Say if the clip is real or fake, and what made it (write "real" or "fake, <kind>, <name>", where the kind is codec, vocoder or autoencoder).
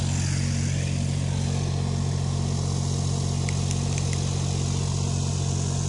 real